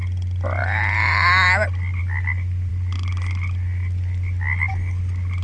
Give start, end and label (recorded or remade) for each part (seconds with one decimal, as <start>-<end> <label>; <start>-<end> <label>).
0.0-5.4 recorded